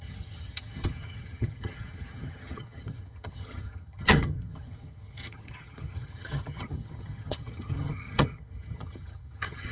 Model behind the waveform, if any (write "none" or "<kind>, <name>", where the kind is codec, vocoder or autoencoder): vocoder, HiFi-GAN